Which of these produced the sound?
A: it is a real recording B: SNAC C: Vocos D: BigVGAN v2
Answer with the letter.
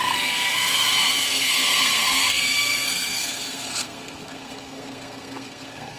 B